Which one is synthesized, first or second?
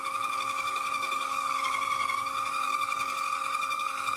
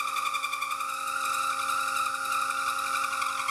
first